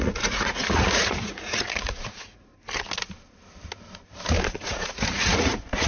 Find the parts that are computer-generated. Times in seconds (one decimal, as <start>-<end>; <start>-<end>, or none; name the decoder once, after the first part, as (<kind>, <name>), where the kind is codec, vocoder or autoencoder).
0.0-2.5 (vocoder, Vocos); 4.6-5.9

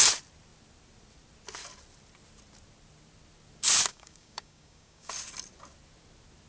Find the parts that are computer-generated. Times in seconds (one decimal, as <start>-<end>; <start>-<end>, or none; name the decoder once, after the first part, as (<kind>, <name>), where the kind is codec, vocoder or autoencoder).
3.9-5.1 (codec, DAC)